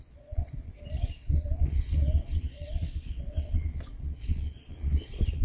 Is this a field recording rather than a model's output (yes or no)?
no